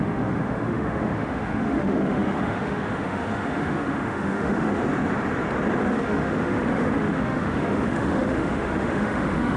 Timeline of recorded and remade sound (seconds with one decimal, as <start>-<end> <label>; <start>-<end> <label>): 0.0-4.8 remade; 4.8-5.8 recorded; 5.8-9.6 remade